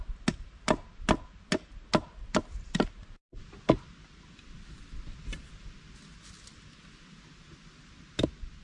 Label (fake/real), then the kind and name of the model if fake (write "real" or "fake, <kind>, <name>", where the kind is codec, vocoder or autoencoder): real